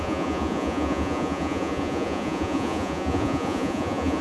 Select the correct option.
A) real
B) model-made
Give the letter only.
B